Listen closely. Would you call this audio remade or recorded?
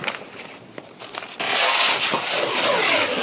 recorded